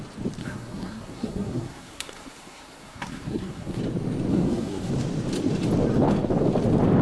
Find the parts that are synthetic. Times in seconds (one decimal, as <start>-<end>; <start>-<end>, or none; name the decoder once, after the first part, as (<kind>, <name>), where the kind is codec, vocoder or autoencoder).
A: 0.4-3.8 (codec, SNAC); 4.3-4.9